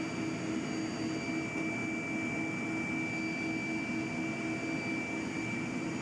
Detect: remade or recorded recorded